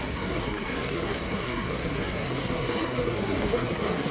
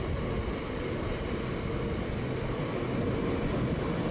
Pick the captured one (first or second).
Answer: second